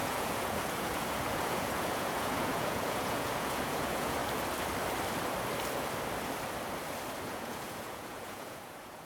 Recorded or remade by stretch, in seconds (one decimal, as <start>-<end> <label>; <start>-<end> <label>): 0.0-4.2 remade; 4.2-7.2 recorded; 7.2-9.1 remade